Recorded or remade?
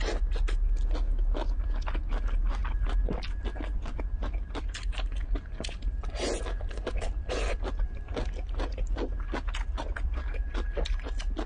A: recorded